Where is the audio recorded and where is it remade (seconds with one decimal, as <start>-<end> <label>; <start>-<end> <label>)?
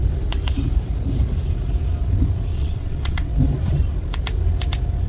0.0-2.5 recorded; 2.5-3.3 remade; 3.3-5.1 recorded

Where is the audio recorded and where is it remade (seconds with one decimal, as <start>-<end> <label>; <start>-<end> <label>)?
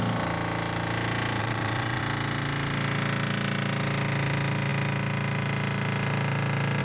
0.0-1.4 recorded; 1.4-2.0 remade; 2.0-6.8 recorded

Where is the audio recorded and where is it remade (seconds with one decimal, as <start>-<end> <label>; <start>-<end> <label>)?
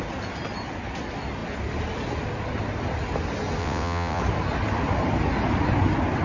0.0-3.6 recorded; 3.6-4.2 remade; 4.2-6.2 recorded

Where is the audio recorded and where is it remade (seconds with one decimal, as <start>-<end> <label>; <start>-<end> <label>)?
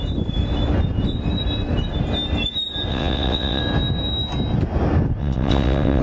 0.0-2.9 recorded; 2.9-3.6 remade; 3.6-5.2 recorded; 5.2-6.0 remade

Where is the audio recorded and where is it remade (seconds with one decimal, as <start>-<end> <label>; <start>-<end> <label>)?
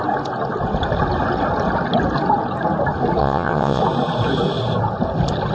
0.0-3.2 recorded; 3.2-3.8 remade; 3.8-5.5 recorded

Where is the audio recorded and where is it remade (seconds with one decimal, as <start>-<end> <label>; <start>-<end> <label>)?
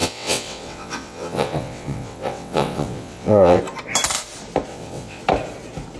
0.0-3.6 remade; 3.6-4.7 recorded; 4.7-5.2 remade; 5.2-6.0 recorded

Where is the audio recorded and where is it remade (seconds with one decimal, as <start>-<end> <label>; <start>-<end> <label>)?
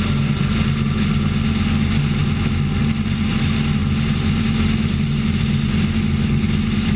0.0-7.0 recorded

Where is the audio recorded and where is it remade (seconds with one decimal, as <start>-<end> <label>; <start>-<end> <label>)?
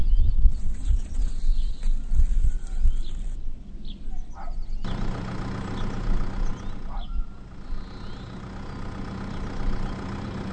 0.0-1.3 remade; 1.3-10.5 recorded